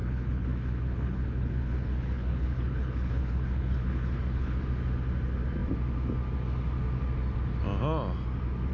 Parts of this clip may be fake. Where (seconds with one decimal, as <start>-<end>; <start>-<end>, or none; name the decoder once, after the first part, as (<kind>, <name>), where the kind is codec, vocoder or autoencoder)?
0.0-4.6 (codec, HILCodec)